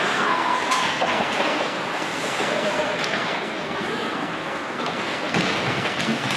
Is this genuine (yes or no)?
no